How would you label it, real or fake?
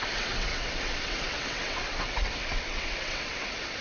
fake